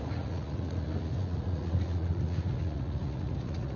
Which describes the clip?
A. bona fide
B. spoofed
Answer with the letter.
B